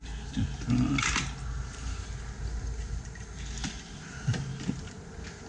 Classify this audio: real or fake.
real